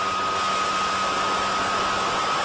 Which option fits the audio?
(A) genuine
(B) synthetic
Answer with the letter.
A